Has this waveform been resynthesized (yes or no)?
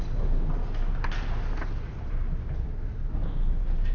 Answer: no